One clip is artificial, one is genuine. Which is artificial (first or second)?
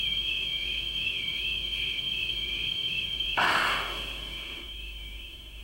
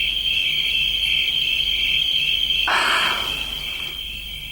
first